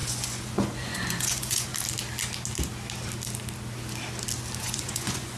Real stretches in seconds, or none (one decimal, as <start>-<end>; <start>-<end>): 1.7-4.6